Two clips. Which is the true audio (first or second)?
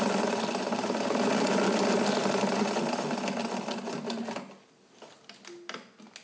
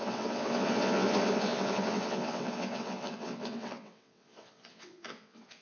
first